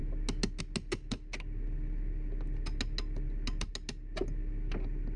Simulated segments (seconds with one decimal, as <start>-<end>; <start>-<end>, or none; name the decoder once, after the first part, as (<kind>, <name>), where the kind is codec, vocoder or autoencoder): none